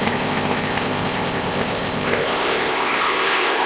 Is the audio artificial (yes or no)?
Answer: yes